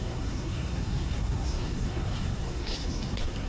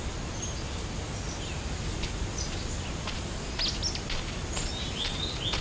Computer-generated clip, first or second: first